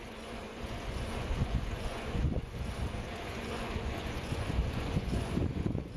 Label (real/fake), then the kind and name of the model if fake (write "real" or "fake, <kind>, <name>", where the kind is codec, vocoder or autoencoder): fake, vocoder, Vocos